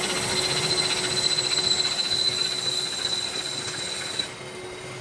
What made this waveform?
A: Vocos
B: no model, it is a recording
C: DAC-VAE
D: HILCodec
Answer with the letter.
B